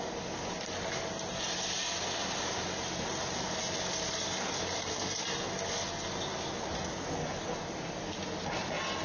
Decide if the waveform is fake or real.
real